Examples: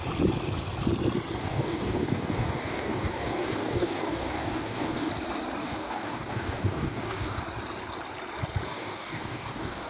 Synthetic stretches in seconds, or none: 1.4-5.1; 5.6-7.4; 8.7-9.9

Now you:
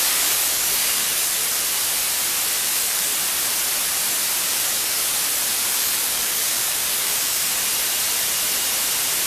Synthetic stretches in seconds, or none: 0.0-1.4; 2.6-3.1; 4.4-5.1; 5.7-7.5

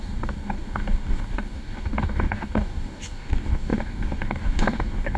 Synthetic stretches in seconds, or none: 0.0-5.2

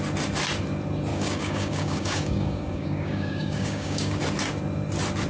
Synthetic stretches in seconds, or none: 1.1-4.2

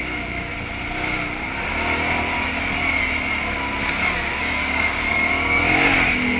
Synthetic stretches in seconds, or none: 0.0-0.5; 4.3-6.4

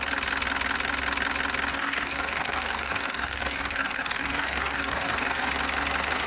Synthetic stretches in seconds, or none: 1.7-5.5

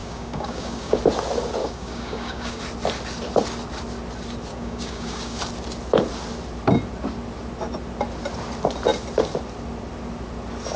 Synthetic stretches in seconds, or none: 0.0-1.0; 1.6-2.6; 4.5-5.4